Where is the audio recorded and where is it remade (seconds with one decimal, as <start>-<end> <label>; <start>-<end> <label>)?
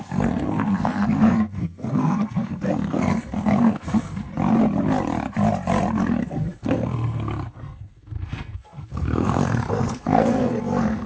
0.0-4.3 remade; 4.3-6.2 recorded; 6.2-11.1 remade